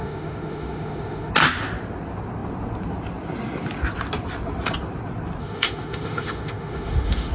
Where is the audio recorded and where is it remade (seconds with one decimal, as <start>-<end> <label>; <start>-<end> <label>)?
0.0-1.3 remade; 1.3-5.4 recorded; 5.4-7.3 remade